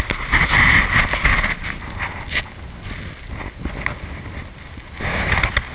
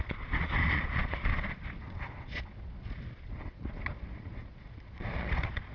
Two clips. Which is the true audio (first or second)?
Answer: first